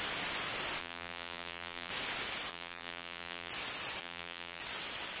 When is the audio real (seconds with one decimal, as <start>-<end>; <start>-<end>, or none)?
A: 0.0-0.8; 1.9-2.5; 3.5-4.0; 4.6-5.2